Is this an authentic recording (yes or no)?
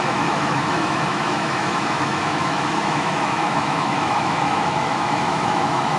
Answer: no